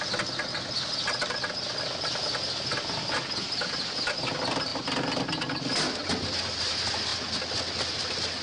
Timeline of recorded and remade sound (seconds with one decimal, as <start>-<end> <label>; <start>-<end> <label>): 0.0-8.4 recorded